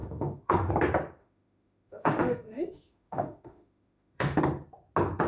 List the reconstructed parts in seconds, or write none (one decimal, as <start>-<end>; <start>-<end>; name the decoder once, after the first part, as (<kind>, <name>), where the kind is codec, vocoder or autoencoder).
0.0-0.7 (autoencoder, DAC-VAE); 1.2-4.4